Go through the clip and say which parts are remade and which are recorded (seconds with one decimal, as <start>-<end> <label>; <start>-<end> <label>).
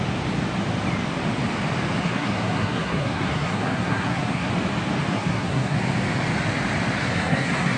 0.0-2.0 recorded; 2.0-4.5 remade; 4.5-5.1 recorded; 5.1-5.8 remade; 5.8-7.0 recorded; 7.0-7.8 remade